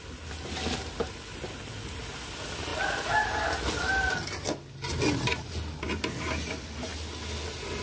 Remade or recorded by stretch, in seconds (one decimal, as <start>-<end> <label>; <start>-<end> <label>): 0.0-7.8 recorded